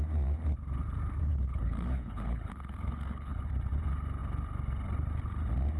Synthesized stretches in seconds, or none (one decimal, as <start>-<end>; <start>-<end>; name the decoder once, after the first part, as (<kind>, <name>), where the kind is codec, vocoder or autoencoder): 1.3-3.4 (codec, HILCodec)